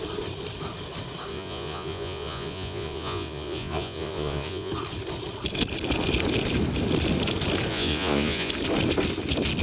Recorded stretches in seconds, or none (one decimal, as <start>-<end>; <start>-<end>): 0.0-1.3; 4.7-7.7; 8.5-9.6

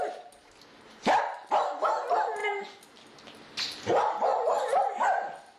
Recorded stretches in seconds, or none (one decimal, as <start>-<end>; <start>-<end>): 0.0-5.6